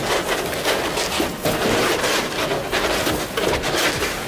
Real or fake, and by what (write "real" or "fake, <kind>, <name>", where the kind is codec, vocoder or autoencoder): real